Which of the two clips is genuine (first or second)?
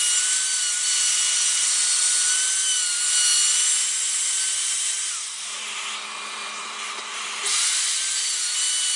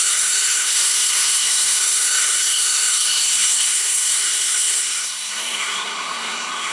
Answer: first